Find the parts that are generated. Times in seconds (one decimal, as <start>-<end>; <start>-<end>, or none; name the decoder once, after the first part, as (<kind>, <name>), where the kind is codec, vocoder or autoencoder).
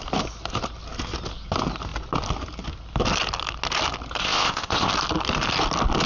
4.2-4.9 (codec, ZipCodec)